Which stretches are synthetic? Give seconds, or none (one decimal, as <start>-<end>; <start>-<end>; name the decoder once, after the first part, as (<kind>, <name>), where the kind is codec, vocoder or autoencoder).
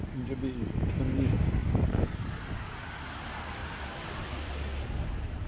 1.6-2.3 (vocoder, BigVGAN v2); 3.6-4.3